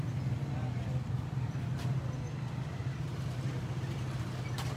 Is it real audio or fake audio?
real